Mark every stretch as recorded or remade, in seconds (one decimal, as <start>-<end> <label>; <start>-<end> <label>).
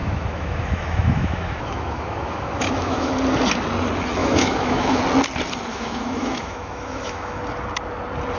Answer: 0.0-3.1 remade; 3.1-4.2 recorded; 4.2-5.0 remade; 5.0-5.7 recorded; 5.7-7.4 remade; 7.4-8.4 recorded